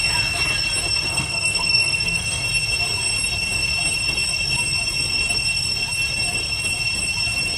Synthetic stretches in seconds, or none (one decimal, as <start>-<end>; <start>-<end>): 1.1-2.4